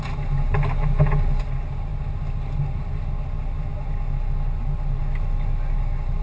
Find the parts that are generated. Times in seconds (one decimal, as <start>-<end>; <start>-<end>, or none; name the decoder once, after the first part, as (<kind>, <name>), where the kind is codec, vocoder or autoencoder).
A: none